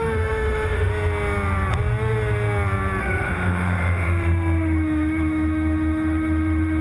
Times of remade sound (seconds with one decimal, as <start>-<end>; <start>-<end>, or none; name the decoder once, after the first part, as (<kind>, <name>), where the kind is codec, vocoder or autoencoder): 0.0-0.9 (autoencoder, DAC-VAE); 3.0-6.8